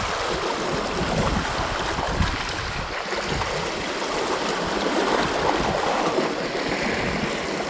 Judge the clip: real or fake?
real